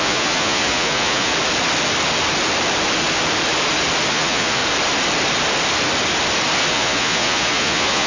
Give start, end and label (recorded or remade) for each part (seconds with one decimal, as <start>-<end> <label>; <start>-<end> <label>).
0.0-1.3 remade; 1.3-4.1 recorded; 4.1-4.6 remade; 4.6-6.7 recorded; 6.7-8.1 remade

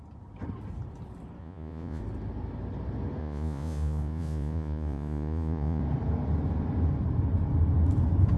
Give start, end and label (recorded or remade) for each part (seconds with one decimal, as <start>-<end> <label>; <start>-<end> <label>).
0.0-1.4 recorded; 1.4-2.0 remade; 2.0-3.2 recorded; 3.2-5.8 remade; 5.8-8.4 recorded

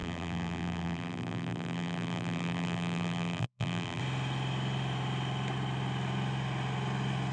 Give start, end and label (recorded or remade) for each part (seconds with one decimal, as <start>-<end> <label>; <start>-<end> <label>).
0.0-4.0 remade; 4.0-7.3 recorded

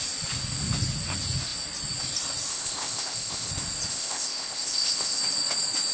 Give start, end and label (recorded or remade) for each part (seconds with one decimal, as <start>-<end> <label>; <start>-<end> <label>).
0.0-2.5 recorded; 2.5-3.5 remade; 3.5-3.9 recorded; 3.9-5.2 remade; 5.2-5.9 recorded

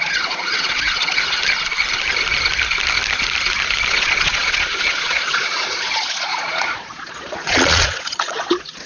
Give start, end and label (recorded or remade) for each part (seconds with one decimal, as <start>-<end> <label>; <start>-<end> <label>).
0.0-1.4 remade; 1.4-3.9 recorded; 3.9-8.9 remade

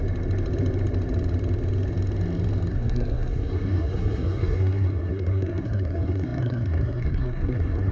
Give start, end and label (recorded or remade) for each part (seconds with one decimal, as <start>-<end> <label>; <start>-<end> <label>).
0.0-2.7 recorded; 2.7-7.9 remade

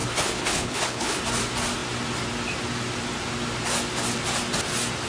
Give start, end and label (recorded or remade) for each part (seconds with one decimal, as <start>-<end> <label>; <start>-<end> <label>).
0.0-1.2 remade; 1.2-5.1 recorded

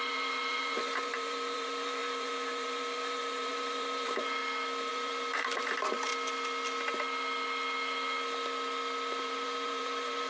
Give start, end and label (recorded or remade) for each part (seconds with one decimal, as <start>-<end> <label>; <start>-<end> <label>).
0.0-4.4 remade; 4.4-4.9 recorded; 4.9-6.1 remade; 6.1-9.2 recorded; 9.2-10.3 remade